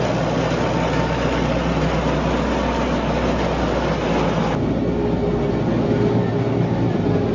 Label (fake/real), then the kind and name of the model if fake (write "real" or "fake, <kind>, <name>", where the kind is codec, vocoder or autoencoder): real